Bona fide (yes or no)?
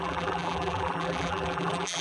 no